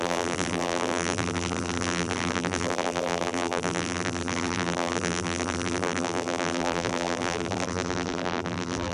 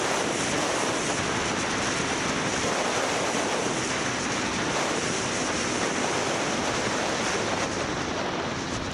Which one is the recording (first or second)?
second